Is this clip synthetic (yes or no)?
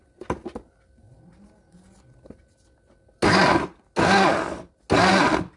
no